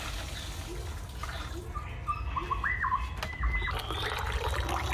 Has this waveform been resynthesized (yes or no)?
no